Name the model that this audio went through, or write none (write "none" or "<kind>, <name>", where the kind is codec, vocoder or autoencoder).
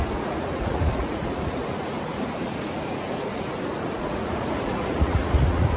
vocoder, Vocos